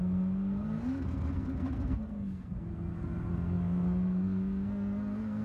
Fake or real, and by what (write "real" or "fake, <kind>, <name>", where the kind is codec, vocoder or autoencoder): fake, codec, SNAC